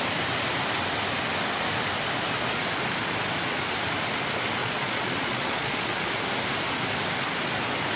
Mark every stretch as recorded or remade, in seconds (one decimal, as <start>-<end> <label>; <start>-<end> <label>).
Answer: 0.0-4.6 recorded; 4.6-6.2 remade; 6.2-8.0 recorded